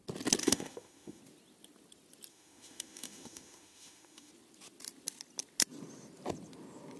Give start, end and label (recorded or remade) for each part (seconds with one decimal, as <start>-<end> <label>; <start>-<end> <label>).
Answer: 0.0-0.4 recorded; 0.4-1.2 remade; 1.2-2.3 recorded; 2.3-4.3 remade; 4.3-7.0 recorded